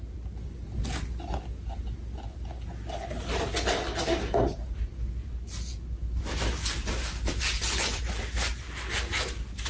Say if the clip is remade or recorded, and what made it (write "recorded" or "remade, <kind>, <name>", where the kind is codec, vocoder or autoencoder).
recorded